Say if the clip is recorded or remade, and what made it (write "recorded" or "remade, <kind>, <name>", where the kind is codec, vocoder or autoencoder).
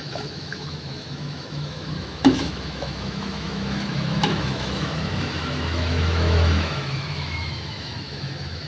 remade, autoencoder, DAC-VAE